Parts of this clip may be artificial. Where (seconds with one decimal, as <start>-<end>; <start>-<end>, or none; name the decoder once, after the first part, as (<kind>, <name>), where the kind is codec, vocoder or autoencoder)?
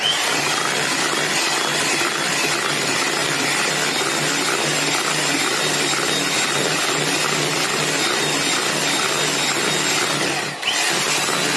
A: none